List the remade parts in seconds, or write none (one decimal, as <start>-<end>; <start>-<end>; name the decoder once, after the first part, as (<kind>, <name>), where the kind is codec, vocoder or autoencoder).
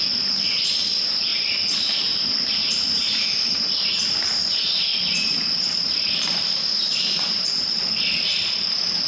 1.3-3.0 (vocoder, BigVGAN v2); 4.9-7.8